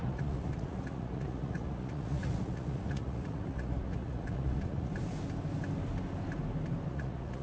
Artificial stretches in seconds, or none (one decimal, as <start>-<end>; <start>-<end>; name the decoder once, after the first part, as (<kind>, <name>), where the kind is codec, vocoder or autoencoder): 0.0-4.9 (vocoder, Vocos); 6.9-7.4